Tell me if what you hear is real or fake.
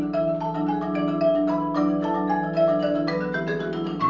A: real